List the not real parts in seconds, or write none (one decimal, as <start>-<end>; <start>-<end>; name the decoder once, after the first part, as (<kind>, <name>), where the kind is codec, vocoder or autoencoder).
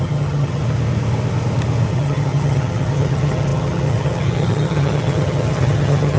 0.0-0.6 (vocoder, HiFi-GAN); 1.9-6.2